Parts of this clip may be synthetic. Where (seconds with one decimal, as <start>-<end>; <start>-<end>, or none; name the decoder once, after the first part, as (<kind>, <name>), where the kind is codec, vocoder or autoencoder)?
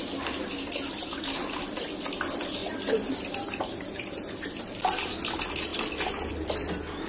0.0-7.1 (vocoder, BigVGAN v2)